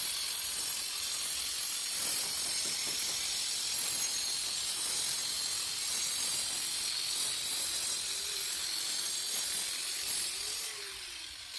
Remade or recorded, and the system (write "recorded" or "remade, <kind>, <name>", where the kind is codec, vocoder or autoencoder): recorded